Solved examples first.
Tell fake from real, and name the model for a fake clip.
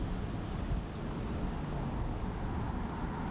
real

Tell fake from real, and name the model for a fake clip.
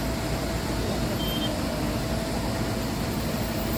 real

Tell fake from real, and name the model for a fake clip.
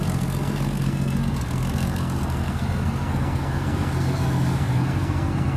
fake, codec, SNAC